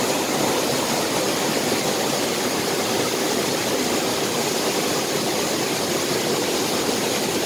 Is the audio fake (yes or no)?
yes